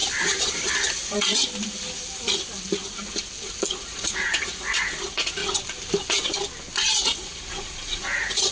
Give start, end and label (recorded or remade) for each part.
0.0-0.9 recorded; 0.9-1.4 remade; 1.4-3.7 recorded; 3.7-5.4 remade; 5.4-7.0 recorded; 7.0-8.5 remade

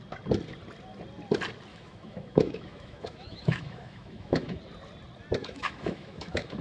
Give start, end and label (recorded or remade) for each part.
0.0-1.7 recorded; 1.7-4.6 remade; 4.6-5.4 recorded; 5.4-6.6 remade